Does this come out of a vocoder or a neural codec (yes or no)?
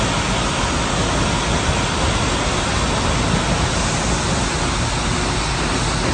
no